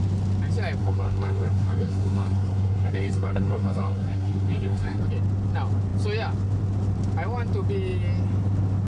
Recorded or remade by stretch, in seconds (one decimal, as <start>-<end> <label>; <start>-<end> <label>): 0.0-0.8 recorded; 0.8-5.0 remade; 5.0-8.9 recorded